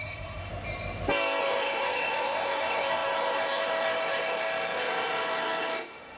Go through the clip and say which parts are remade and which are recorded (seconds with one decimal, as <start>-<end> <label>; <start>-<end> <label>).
0.0-0.5 remade; 0.5-1.4 recorded; 1.4-6.2 remade